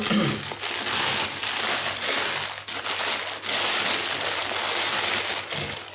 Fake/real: real